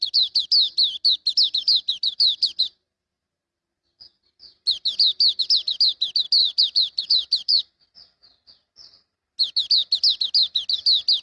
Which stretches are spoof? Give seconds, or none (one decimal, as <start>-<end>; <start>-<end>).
6.4-7.6